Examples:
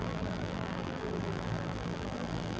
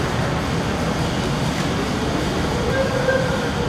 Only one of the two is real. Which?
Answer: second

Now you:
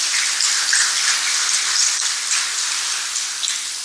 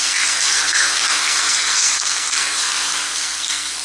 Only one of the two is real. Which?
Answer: first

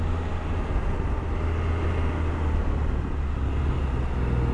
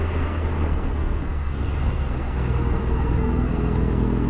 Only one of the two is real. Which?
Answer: first